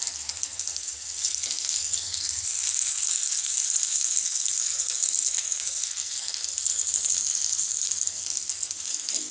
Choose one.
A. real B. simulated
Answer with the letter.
B